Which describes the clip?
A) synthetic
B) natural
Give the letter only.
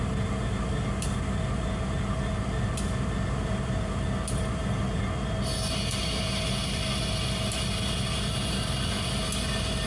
B